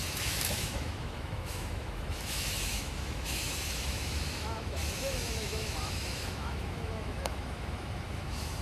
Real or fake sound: fake